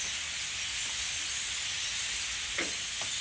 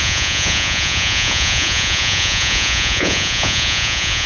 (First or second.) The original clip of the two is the first